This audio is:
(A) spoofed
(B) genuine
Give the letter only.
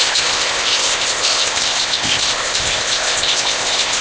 A